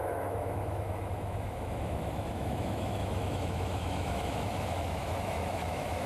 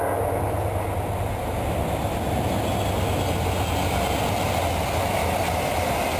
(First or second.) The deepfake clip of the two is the first